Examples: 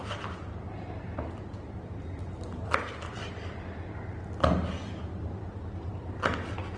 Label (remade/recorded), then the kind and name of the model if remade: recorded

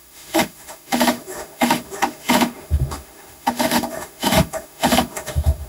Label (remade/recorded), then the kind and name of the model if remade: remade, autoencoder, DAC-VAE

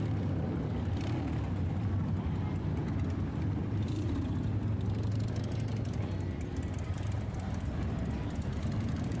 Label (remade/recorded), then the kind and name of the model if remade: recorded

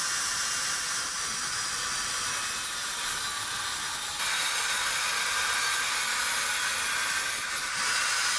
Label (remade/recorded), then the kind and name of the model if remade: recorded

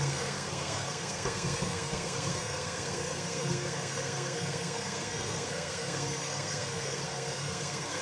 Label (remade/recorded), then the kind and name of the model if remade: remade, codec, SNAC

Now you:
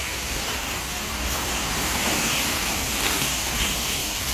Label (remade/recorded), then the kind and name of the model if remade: remade, codec, DAC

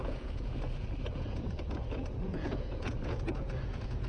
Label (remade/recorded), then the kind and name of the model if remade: remade, vocoder, Vocos